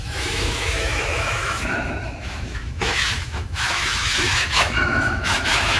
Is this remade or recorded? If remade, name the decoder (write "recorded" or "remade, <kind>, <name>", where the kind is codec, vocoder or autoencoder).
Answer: remade, autoencoder, DAC-VAE